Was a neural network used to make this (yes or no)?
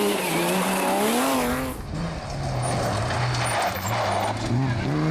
no